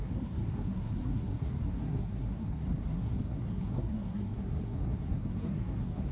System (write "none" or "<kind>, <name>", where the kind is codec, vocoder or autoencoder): codec, SNAC